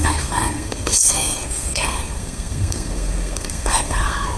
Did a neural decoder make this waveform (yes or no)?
yes